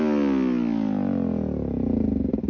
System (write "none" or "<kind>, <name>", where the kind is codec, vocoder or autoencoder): none